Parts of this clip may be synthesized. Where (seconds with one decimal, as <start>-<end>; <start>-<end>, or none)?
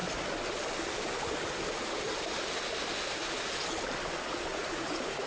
4.5-5.3